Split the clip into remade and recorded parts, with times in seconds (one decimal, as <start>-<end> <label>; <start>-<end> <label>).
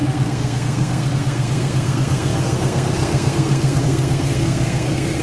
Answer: 0.0-5.2 remade